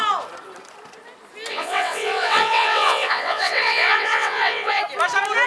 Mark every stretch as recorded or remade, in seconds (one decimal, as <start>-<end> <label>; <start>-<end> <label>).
0.0-1.5 recorded; 1.5-4.8 remade; 4.8-5.5 recorded